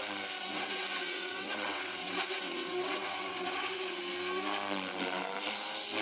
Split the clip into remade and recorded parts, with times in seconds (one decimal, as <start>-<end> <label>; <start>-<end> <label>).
0.0-0.4 recorded; 0.4-4.0 remade; 4.0-6.0 recorded